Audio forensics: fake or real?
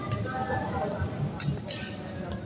real